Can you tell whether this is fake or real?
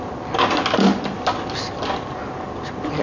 real